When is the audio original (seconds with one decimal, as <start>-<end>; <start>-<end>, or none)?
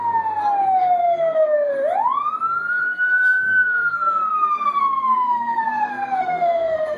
0.0-1.0; 1.7-2.8